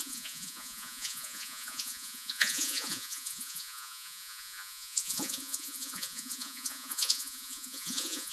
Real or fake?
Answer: fake